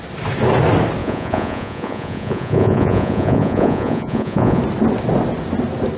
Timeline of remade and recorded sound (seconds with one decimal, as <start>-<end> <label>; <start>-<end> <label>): 0.0-1.0 recorded; 1.0-4.6 remade; 4.6-6.0 recorded